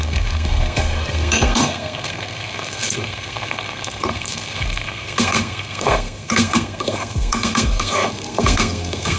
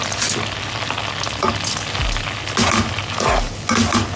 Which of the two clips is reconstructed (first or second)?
first